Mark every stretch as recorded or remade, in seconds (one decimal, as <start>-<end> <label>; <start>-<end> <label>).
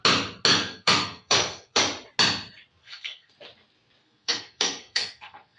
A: 0.0-0.5 recorded; 0.5-1.8 remade; 1.8-2.8 recorded; 2.8-3.3 remade; 3.3-4.0 recorded; 4.0-5.6 remade